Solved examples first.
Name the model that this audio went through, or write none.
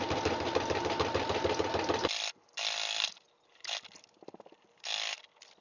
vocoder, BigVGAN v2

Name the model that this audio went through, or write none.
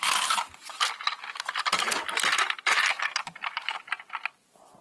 none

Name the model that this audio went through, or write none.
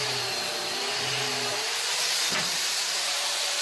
vocoder, BigVGAN v2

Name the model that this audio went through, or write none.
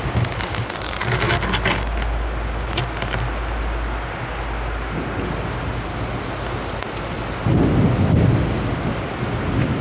none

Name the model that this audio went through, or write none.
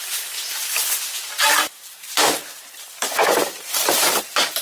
vocoder, BigVGAN v2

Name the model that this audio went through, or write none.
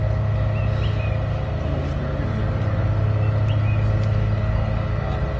none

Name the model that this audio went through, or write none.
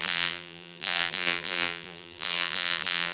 vocoder, BigVGAN v2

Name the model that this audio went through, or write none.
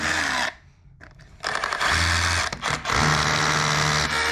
none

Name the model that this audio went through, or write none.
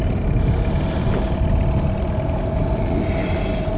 none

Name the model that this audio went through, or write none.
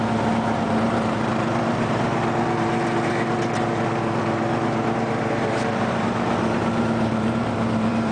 vocoder, BigVGAN v2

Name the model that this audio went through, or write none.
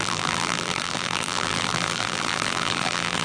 vocoder, BigVGAN v2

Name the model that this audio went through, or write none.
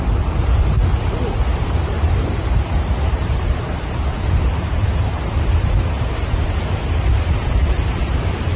vocoder, BigVGAN v2